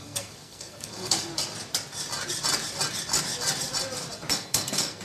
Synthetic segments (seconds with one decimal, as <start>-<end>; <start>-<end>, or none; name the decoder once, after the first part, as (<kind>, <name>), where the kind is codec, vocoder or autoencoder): 0.0-1.3 (codec, SNAC); 4.3-5.0